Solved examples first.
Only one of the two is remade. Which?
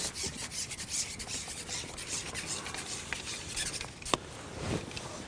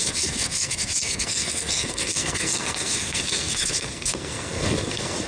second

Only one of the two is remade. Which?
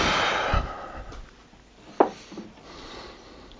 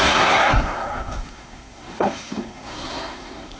second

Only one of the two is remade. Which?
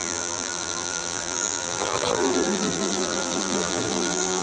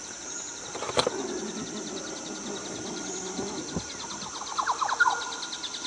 first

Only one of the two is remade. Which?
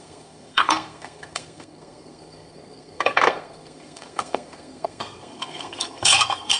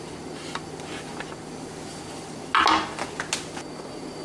first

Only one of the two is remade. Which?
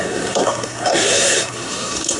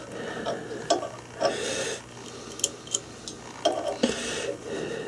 first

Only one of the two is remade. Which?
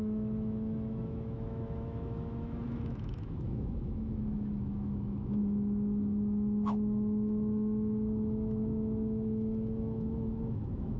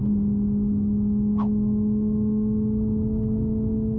first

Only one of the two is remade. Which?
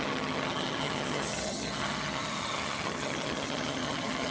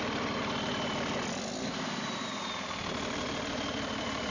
first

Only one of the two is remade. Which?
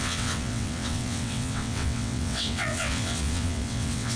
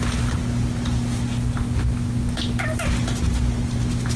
first